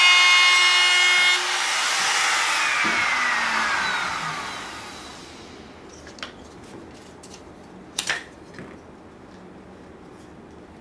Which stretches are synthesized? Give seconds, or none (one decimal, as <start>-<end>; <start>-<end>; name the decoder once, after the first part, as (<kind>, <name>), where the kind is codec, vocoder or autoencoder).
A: none